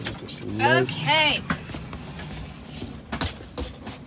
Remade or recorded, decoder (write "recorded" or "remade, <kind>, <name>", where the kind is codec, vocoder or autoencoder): recorded